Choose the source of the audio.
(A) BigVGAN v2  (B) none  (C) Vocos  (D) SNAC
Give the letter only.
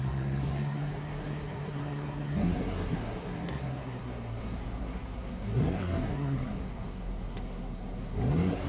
D